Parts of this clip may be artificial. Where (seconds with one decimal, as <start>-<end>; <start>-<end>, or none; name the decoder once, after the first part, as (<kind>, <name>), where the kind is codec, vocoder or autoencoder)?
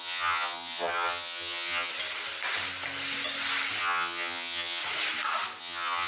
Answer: 0.0-1.9 (vocoder, HiFi-GAN); 3.8-4.8; 5.6-6.1